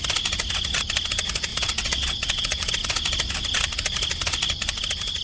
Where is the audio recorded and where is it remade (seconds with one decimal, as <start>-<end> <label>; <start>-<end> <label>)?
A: 0.0-1.5 recorded; 1.5-2.7 remade; 2.7-5.2 recorded